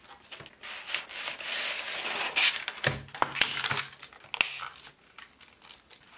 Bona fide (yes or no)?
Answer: yes